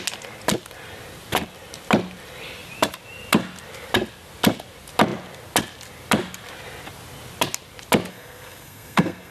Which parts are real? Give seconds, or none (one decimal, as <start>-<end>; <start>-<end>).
0.0-8.1

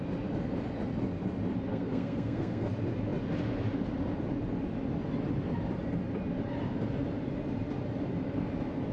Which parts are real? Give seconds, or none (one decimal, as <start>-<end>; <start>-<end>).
0.0-1.7; 2.7-8.9

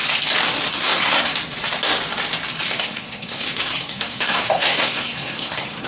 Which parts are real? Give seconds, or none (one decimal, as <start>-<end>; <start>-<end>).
0.0-0.7; 1.3-2.8

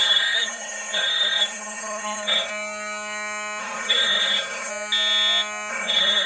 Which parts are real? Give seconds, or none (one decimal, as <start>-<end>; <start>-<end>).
2.5-3.6; 4.7-5.7

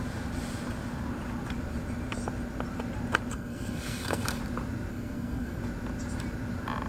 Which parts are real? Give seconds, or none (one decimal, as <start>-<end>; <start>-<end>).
0.0-3.3; 4.4-4.9; 5.6-6.9

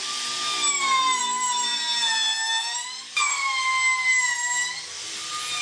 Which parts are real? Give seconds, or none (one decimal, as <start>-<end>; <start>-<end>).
0.0-5.6

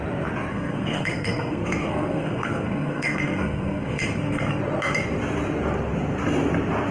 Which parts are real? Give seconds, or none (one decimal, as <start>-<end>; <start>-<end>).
0.0-0.5; 4.6-6.9

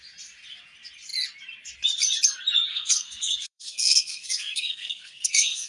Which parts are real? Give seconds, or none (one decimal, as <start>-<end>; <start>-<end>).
0.0-2.7